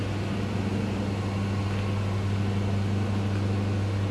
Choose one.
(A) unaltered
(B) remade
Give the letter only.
A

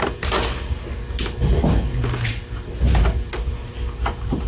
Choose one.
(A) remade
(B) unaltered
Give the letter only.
B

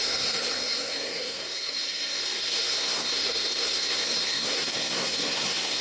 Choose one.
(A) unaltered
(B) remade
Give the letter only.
B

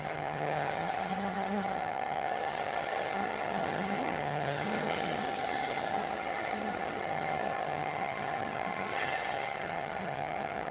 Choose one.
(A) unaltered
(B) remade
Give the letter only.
B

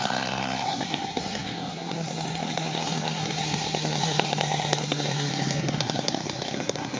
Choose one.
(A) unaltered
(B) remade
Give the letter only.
B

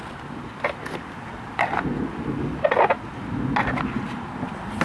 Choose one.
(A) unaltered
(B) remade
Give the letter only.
A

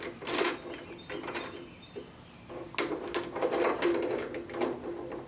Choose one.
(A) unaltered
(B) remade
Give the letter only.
A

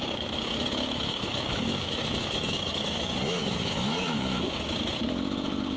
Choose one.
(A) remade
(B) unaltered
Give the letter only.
A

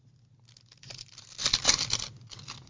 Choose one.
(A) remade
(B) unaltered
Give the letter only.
B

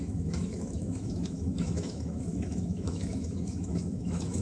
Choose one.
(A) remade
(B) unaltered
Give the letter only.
A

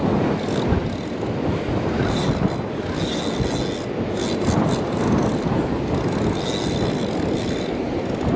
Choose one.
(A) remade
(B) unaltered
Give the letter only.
B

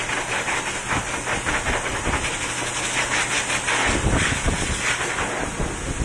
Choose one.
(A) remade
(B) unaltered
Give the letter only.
B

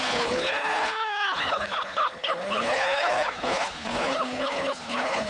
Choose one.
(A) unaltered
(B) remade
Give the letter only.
B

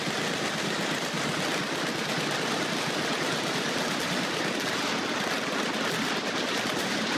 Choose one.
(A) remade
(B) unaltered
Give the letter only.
B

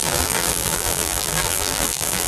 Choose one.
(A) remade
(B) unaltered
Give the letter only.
A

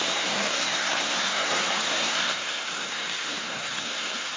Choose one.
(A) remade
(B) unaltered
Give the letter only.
A